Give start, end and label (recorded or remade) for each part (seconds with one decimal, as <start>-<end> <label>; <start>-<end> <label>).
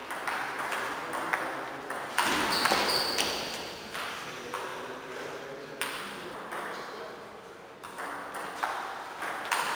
0.0-9.8 recorded